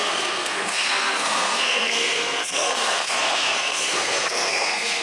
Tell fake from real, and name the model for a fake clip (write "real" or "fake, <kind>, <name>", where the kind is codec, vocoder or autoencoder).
fake, codec, SNAC